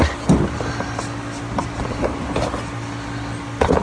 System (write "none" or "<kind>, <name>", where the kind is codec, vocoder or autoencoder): none